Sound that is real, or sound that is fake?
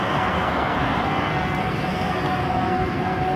fake